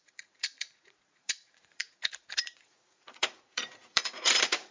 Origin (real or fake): fake